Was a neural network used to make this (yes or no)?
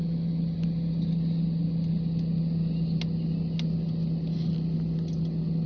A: no